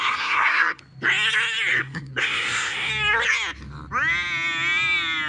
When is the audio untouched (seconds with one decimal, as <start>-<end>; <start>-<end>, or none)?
0.8-1.7; 2.9-5.3